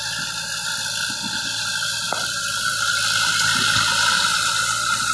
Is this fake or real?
real